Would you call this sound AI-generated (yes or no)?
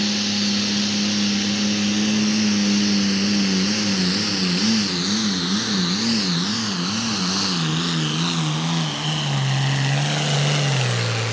no